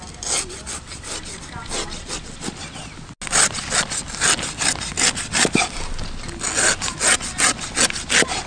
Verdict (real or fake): real